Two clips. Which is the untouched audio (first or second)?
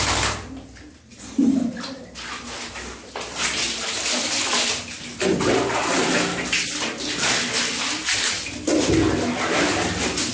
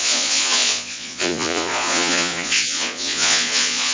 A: first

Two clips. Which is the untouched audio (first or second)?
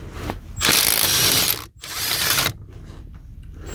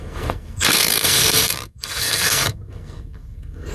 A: first